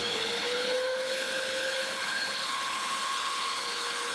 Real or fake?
fake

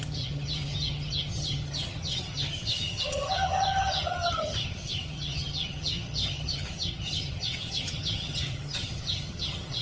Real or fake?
fake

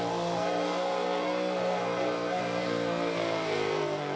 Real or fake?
fake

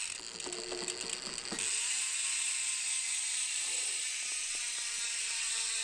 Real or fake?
real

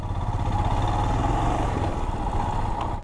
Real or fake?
real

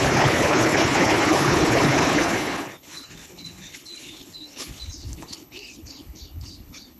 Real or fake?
fake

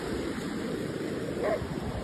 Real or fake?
fake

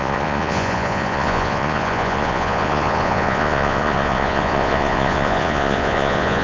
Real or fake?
fake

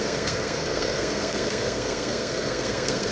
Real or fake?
fake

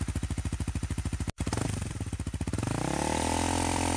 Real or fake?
real